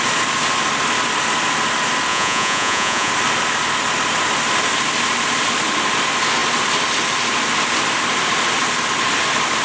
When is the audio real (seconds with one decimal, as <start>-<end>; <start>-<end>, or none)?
0.0-2.1; 3.1-9.6